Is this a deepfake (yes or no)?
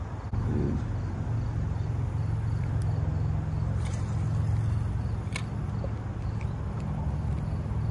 no